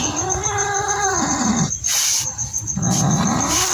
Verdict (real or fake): fake